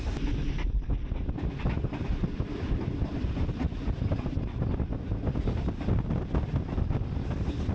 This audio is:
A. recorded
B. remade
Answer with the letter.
A